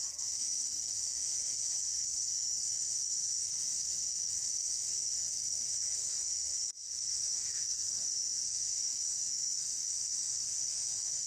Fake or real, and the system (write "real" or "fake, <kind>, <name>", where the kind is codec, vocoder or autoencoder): fake, codec, SNAC